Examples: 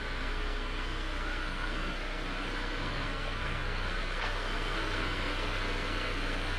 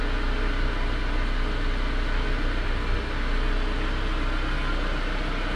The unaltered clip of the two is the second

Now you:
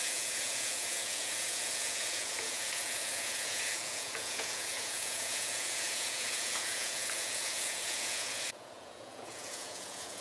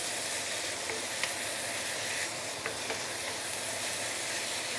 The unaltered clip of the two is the second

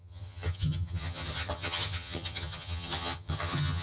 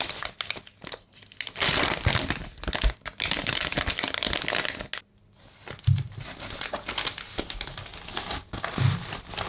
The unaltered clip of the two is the second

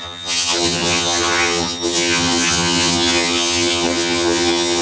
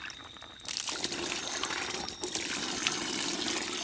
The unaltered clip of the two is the second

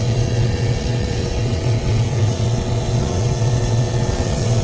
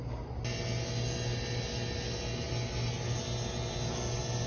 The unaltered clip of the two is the second